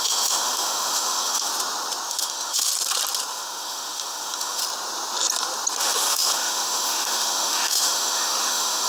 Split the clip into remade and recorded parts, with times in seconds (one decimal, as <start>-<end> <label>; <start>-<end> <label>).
0.0-1.5 remade; 1.5-2.1 recorded; 2.1-2.7 remade; 2.7-3.3 recorded; 3.3-4.6 remade; 4.6-5.8 recorded; 5.8-8.9 remade